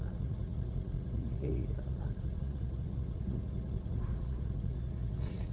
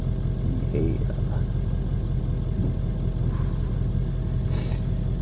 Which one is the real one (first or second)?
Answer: second